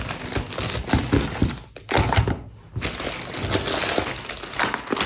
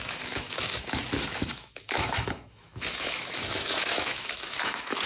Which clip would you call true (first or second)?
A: first